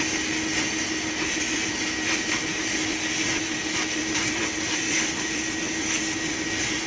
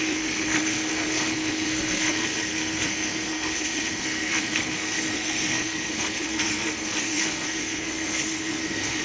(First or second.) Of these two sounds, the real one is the first